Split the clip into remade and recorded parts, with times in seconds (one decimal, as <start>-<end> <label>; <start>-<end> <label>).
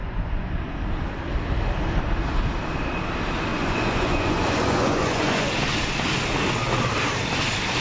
0.0-0.7 remade; 0.7-3.5 recorded; 3.5-5.5 remade; 5.5-7.8 recorded